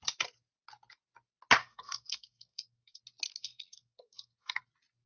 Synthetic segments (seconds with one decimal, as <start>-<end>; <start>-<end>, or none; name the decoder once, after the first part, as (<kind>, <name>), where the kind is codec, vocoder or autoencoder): 1.6-3.0 (codec, SNAC); 3.4-4.6